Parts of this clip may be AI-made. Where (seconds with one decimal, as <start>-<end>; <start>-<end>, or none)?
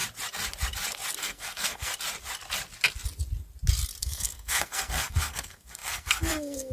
1.2-1.9; 4.0-6.7